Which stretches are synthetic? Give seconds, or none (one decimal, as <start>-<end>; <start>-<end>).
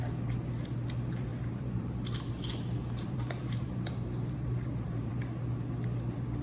1.3-5.1